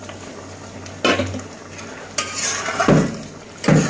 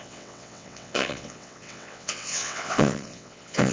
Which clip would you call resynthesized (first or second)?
second